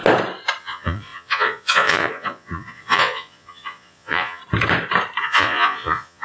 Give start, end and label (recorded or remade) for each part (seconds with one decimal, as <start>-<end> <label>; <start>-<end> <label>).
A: 0.0-0.6 recorded; 0.6-4.4 remade; 4.4-5.2 recorded; 5.2-6.2 remade